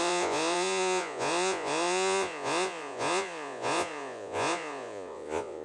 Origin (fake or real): fake